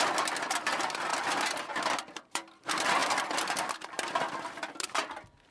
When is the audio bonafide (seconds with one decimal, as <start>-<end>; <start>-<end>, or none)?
0.0-5.5